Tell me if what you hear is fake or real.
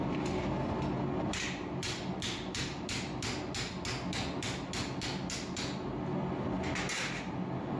real